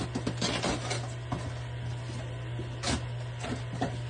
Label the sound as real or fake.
real